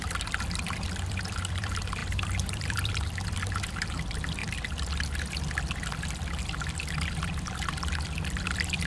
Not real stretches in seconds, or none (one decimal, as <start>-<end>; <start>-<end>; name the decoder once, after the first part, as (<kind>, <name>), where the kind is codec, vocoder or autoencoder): 0.0-4.4 (vocoder, BigVGAN v2); 7.1-8.9